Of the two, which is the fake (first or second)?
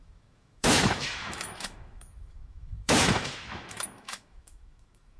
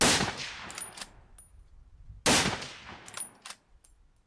first